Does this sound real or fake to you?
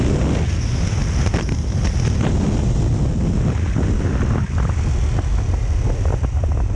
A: real